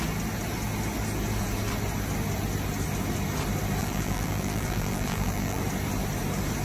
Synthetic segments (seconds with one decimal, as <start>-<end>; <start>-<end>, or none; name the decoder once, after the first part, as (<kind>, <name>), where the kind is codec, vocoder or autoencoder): 3.8-5.6 (vocoder, BigVGAN v2)